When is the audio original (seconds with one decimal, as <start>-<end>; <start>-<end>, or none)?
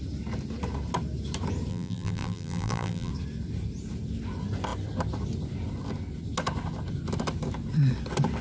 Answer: 0.0-1.7; 3.1-8.4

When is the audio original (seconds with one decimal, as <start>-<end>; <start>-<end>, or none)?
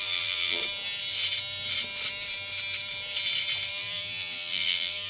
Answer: 0.6-3.7